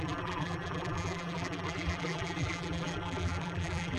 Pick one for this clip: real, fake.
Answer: fake